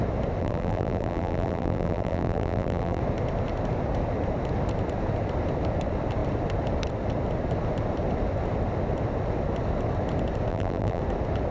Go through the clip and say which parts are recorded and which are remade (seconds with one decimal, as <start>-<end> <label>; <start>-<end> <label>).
0.0-0.4 recorded; 0.4-3.0 remade; 3.0-10.5 recorded; 10.5-11.0 remade; 11.0-11.5 recorded